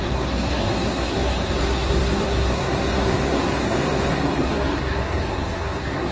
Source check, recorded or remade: remade